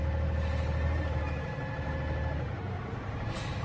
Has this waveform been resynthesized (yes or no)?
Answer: no